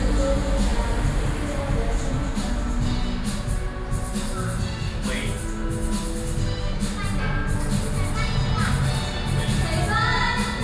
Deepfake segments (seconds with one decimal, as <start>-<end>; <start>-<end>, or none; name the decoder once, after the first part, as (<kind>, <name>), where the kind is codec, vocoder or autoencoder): none